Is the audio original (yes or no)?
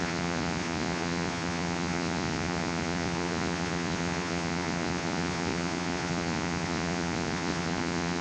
no